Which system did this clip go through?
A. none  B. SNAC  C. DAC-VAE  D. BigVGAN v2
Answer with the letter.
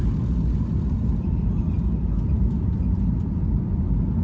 A